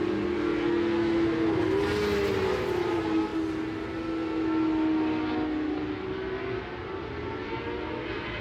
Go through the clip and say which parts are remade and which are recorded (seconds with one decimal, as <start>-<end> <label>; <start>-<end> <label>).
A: 0.0-8.4 recorded